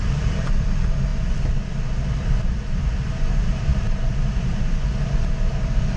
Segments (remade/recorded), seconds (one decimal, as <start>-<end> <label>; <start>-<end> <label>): 0.0-1.1 remade; 1.1-2.2 recorded; 2.2-3.7 remade; 3.7-6.0 recorded